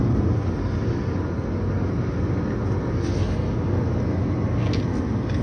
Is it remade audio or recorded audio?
recorded